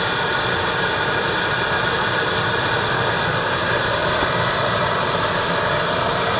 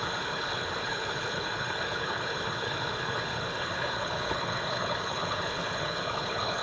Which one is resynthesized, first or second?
second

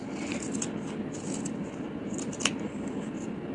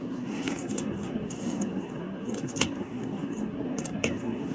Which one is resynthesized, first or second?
second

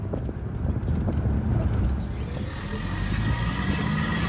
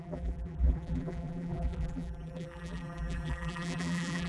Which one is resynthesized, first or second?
second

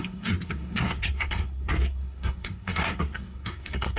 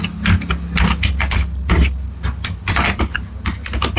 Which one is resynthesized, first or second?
first